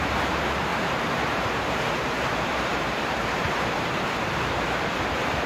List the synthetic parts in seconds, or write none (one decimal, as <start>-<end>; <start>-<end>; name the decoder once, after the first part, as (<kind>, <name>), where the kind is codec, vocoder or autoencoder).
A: 0.0-5.5 (vocoder, BigVGAN v2)